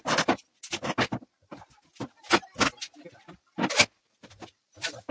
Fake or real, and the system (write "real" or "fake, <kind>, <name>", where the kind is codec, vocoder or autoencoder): real